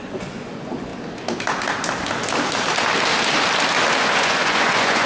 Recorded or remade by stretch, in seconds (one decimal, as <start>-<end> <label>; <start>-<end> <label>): 0.0-0.9 remade; 0.9-4.0 recorded; 4.0-5.1 remade